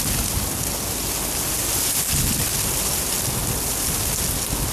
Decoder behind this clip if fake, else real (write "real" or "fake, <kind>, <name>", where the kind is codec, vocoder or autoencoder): real